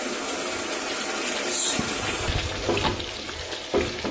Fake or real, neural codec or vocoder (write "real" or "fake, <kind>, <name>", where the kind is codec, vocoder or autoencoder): real